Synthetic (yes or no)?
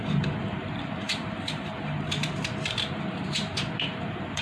yes